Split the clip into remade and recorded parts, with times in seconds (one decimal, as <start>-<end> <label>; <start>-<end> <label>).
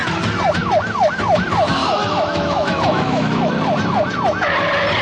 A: 0.0-1.8 recorded; 1.8-3.5 remade; 3.5-5.0 recorded